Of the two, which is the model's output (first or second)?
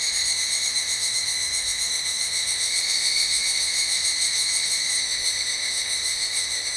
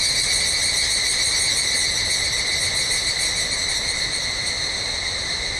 first